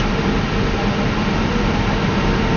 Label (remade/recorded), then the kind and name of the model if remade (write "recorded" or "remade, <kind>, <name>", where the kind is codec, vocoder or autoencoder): recorded